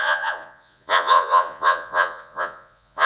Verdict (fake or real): fake